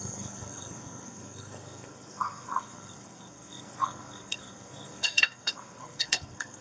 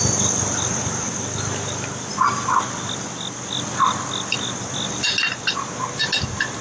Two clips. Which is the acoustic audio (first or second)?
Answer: second